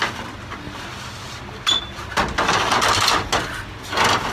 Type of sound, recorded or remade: recorded